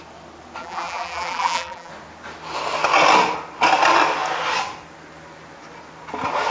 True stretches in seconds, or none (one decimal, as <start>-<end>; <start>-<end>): 0.0-0.6; 1.9-6.5